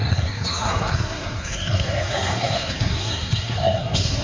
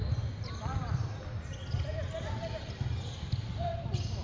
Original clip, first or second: second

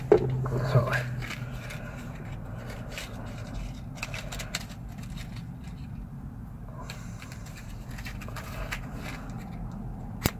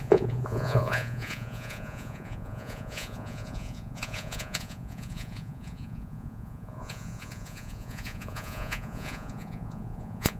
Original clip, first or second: first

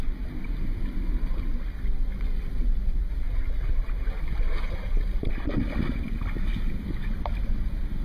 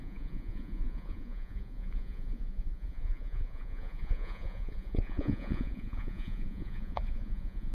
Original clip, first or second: first